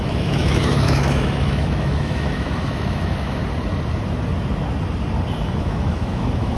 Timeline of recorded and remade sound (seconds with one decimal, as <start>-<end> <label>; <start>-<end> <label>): 0.0-3.4 remade; 3.4-5.6 recorded; 5.6-6.6 remade